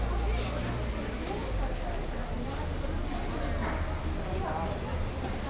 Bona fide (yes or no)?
yes